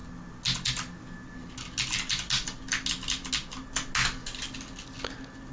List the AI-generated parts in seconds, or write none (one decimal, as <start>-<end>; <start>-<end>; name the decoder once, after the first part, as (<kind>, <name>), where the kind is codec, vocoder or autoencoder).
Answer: none